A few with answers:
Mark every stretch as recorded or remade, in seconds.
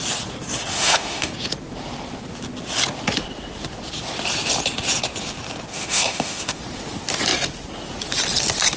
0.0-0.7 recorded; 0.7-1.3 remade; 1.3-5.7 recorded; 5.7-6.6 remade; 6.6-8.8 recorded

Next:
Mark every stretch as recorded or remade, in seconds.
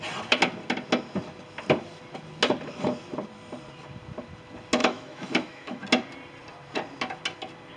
0.0-4.8 recorded; 4.8-5.8 remade; 5.8-7.8 recorded